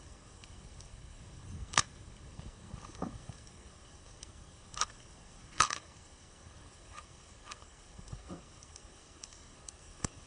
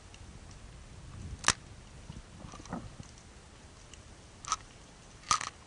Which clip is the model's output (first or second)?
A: first